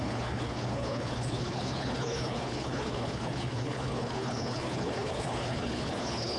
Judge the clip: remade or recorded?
remade